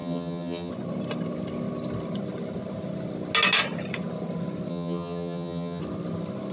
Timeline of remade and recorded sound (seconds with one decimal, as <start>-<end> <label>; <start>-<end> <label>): 0.0-0.7 remade; 0.7-4.7 recorded; 4.7-5.8 remade; 5.8-6.5 recorded